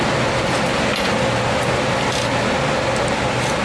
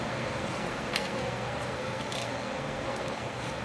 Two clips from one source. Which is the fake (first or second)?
second